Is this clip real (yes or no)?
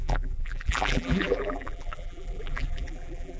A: no